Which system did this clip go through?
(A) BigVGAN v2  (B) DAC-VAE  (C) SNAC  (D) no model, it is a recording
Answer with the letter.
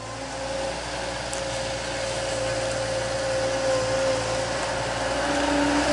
D